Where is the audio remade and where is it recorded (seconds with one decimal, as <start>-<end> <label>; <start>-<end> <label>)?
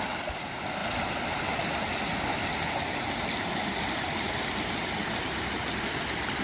0.0-6.4 recorded